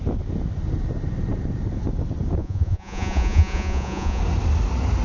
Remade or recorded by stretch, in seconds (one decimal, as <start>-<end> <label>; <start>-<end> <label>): 0.0-2.4 recorded; 2.4-4.2 remade; 4.2-5.0 recorded